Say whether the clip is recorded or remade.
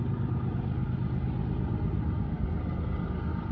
recorded